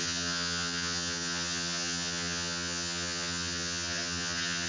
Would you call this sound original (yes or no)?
no